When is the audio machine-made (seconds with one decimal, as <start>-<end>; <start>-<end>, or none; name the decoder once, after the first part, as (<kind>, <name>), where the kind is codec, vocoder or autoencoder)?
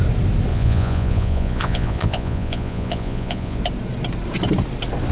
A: 0.5-3.6 (vocoder, Vocos)